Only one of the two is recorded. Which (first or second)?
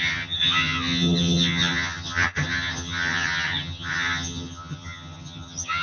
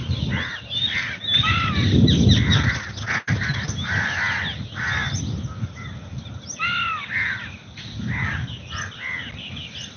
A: second